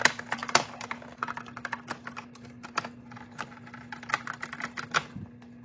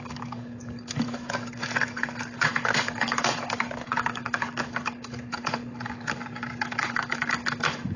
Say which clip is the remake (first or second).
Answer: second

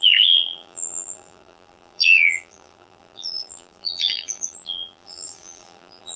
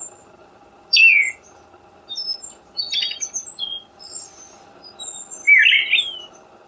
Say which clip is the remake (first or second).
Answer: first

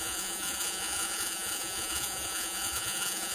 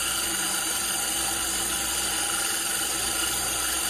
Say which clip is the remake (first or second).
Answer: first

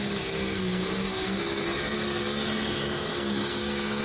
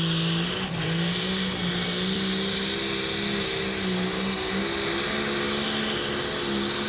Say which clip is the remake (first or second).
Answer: first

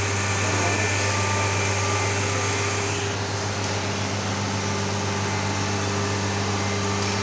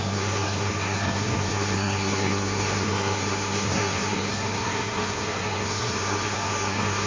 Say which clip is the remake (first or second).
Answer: second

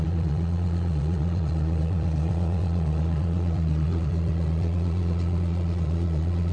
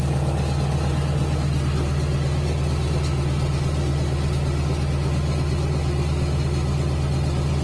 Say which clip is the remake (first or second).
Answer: first